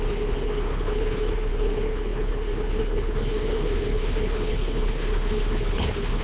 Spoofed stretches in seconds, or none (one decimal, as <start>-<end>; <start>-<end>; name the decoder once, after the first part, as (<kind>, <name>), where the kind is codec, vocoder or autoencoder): 0.0-6.2 (codec, HILCodec)